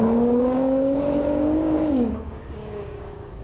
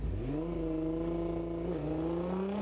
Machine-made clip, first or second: first